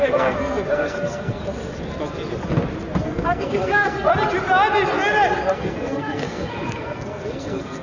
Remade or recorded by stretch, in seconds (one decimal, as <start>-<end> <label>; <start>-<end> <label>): 0.0-1.4 remade; 1.4-3.0 recorded; 3.0-4.1 remade; 4.1-5.5 recorded; 5.5-7.8 remade